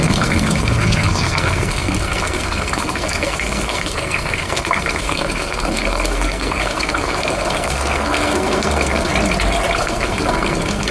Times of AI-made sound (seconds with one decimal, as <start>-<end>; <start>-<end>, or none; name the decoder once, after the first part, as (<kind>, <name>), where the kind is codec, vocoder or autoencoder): 0.0-9.1 (codec, SNAC); 9.8-10.9